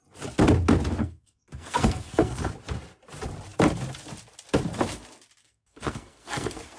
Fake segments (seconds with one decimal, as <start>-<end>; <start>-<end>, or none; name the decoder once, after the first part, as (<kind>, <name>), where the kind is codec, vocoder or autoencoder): 1.0-2.5 (codec, SNAC); 5.4-6.8